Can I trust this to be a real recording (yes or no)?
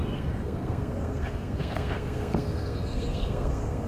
no